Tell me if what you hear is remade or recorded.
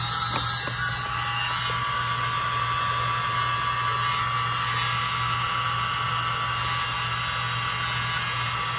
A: recorded